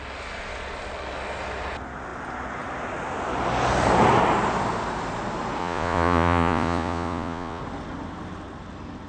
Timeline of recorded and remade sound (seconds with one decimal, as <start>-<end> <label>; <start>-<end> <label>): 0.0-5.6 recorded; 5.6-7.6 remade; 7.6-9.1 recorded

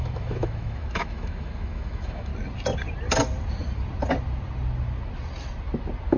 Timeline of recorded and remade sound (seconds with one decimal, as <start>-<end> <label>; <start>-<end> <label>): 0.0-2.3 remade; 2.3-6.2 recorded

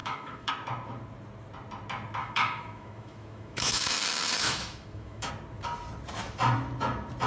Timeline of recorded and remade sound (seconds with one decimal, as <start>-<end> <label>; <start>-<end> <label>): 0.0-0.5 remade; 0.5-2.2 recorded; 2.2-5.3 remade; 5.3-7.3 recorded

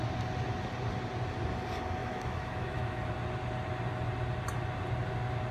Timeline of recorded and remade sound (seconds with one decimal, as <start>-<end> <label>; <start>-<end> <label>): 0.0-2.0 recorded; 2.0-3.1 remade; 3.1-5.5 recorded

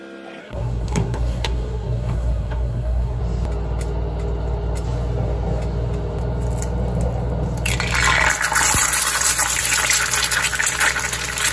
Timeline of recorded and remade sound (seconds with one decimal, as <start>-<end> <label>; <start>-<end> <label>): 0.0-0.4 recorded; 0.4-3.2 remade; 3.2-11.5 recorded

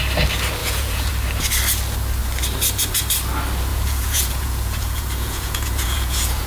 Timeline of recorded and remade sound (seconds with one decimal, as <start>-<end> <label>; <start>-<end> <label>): 0.0-0.6 recorded; 0.6-1.1 remade; 1.1-3.7 recorded; 3.7-6.5 remade